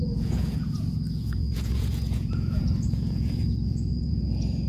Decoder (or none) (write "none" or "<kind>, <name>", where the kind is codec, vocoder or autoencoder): vocoder, Vocos